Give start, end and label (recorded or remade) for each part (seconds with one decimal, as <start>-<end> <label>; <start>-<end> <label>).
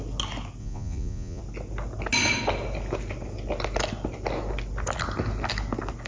0.0-0.6 recorded; 0.6-1.4 remade; 1.4-6.1 recorded